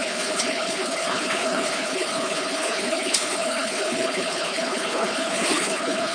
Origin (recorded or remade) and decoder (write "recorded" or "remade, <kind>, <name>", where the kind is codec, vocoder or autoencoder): remade, codec, HILCodec